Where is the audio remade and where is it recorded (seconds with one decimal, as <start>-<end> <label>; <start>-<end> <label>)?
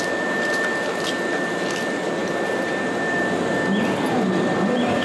0.0-2.2 recorded; 2.2-3.5 remade; 3.5-5.0 recorded